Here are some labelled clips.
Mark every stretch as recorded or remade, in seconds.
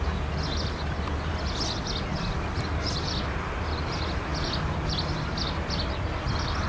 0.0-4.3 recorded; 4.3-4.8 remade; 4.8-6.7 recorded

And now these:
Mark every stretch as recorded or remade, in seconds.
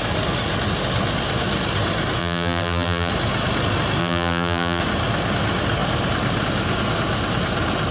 0.0-2.2 recorded; 2.2-3.1 remade; 3.1-4.0 recorded; 4.0-4.8 remade; 4.8-7.9 recorded